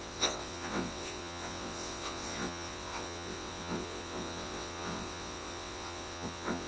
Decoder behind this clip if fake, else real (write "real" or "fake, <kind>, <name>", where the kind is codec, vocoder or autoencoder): fake, vocoder, WaveNeXt